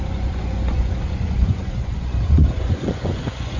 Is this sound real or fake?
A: fake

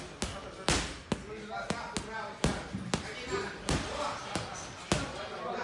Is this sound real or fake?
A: real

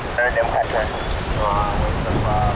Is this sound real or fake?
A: real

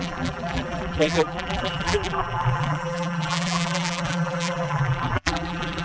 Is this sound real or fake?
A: fake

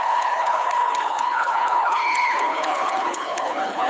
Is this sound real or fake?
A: fake